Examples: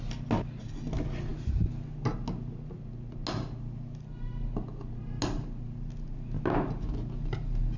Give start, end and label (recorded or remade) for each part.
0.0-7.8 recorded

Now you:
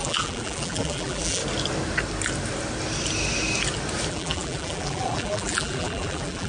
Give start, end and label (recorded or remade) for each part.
0.0-1.4 remade; 1.4-4.1 recorded; 4.1-6.5 remade

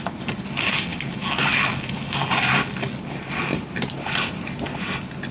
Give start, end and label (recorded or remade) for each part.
0.0-3.5 recorded; 3.5-4.8 remade; 4.8-5.3 recorded

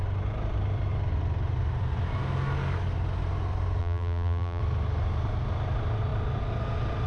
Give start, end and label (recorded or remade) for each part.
0.0-3.8 recorded; 3.8-4.6 remade; 4.6-7.1 recorded

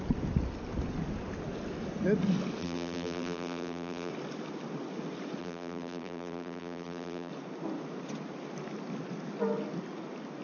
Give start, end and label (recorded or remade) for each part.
0.0-2.6 recorded; 2.6-4.1 remade; 4.1-5.4 recorded; 5.4-7.3 remade; 7.3-10.4 recorded

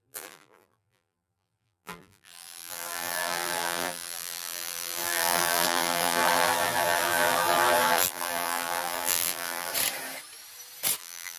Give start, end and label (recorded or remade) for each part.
0.0-9.7 remade; 9.7-11.0 recorded; 11.0-11.4 remade

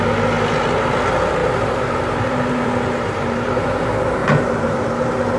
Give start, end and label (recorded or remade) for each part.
0.0-1.4 recorded; 1.4-3.5 remade; 3.5-4.2 recorded; 4.2-4.9 remade; 4.9-5.4 recorded